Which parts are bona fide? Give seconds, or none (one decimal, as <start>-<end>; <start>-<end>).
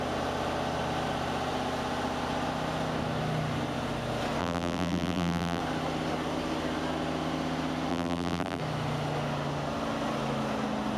0.0-4.4; 5.6-7.9; 8.6-11.0